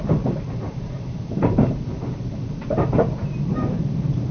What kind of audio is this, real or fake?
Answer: fake